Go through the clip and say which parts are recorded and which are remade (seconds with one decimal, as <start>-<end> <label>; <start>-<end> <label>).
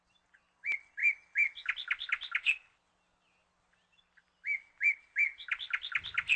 0.0-6.4 recorded